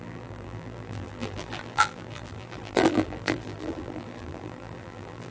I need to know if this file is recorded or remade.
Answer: remade